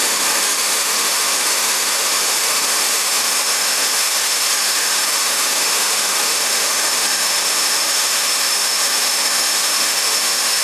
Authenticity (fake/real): fake